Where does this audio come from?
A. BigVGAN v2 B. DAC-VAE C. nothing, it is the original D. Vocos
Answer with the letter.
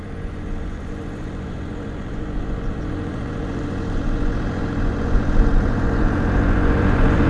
D